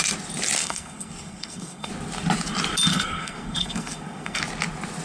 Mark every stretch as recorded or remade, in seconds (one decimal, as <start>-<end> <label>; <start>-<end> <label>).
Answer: 0.0-0.6 recorded; 0.6-1.9 remade; 1.9-2.9 recorded; 2.9-4.4 remade; 4.4-5.0 recorded